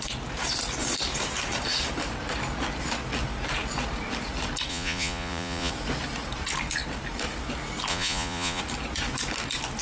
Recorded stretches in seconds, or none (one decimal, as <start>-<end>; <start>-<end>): 0.0-4.7; 5.7-7.9; 8.6-9.8